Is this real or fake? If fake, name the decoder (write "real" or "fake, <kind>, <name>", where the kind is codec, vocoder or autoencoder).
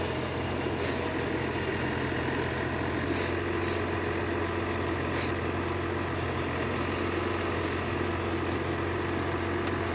real